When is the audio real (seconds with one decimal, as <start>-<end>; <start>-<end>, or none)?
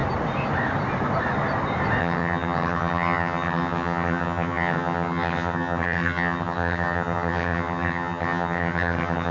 0.0-2.0